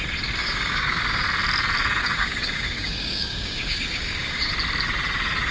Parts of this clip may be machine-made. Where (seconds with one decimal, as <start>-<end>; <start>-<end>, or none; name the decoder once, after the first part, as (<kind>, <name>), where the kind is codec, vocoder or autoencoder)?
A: 0.4-1.0 (codec, DAC); 2.0-4.5